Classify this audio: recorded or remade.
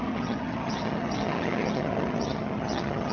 remade